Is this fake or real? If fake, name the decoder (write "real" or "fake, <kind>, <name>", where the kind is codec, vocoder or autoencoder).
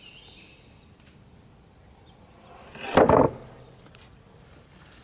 real